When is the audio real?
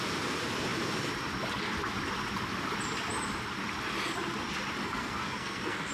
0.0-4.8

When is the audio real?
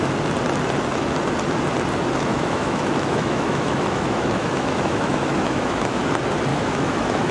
0.0-2.3; 6.0-6.5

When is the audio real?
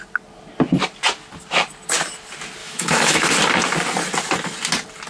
0.0-2.6; 3.3-5.1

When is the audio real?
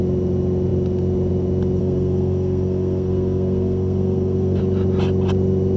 0.0-1.8; 4.6-5.8